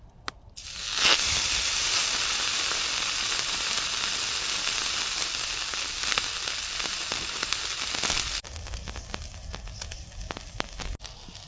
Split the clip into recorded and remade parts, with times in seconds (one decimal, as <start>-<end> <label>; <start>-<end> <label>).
0.0-11.5 recorded